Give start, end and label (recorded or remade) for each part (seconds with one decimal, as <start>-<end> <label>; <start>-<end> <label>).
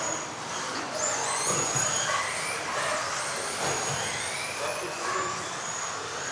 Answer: 0.0-0.7 recorded; 0.7-1.7 remade; 1.7-4.7 recorded; 4.7-5.4 remade; 5.4-6.3 recorded